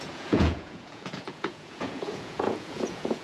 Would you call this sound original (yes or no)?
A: no